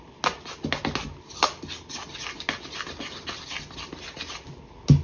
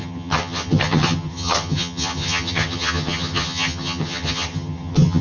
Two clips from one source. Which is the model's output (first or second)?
second